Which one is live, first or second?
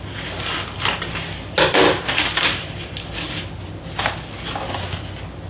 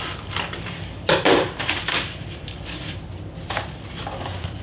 first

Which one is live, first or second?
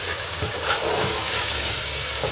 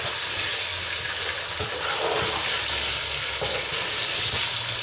second